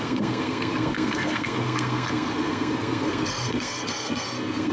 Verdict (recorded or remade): remade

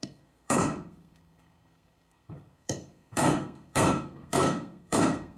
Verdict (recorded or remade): remade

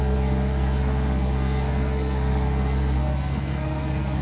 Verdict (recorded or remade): remade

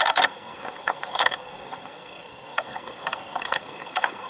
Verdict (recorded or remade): remade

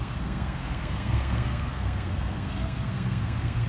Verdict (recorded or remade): remade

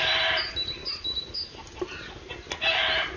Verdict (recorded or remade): recorded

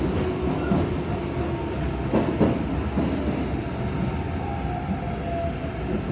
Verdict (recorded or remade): recorded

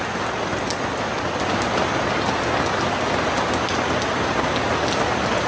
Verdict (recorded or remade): recorded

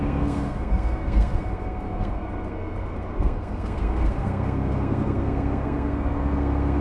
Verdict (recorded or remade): remade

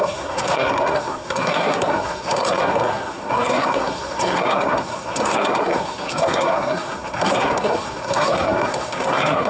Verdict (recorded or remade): remade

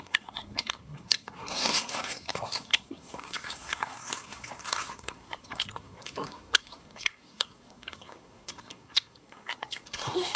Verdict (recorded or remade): remade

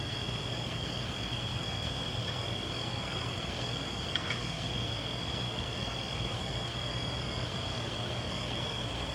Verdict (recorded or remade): remade